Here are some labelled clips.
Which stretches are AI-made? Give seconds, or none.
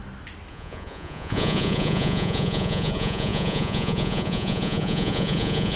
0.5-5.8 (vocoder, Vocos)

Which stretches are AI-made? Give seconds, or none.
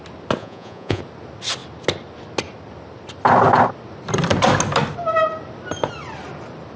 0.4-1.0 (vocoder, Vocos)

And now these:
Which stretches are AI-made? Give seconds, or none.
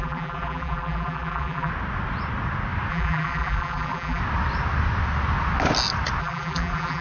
0.0-1.7 (vocoder, BigVGAN v2); 2.9-4.2; 6.2-7.0